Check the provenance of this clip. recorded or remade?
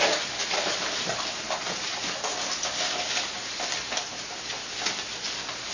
recorded